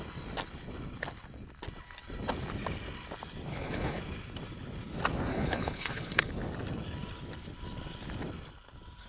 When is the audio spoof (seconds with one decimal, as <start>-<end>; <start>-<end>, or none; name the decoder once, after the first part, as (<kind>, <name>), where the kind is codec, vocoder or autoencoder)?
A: 3.5-4.0 (codec, HILCodec); 5.3-6.3